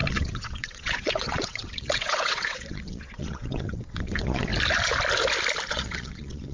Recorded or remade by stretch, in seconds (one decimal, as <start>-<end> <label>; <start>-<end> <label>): 0.0-4.5 remade; 4.5-5.7 recorded; 5.7-6.5 remade